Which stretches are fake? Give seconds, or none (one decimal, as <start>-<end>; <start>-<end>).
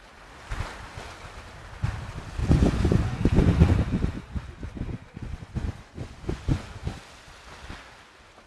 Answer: 2.4-6.7